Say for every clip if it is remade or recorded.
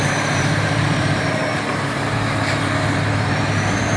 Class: remade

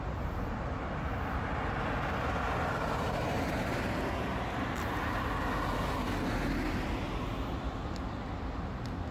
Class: recorded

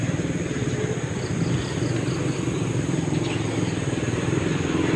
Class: remade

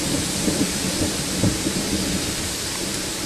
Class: remade